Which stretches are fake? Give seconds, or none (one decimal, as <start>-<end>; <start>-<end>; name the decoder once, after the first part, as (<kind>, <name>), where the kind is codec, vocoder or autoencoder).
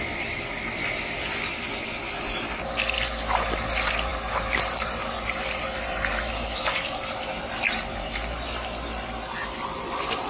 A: 4.1-7.4 (vocoder, BigVGAN v2)